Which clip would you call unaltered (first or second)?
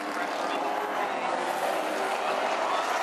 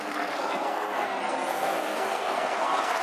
first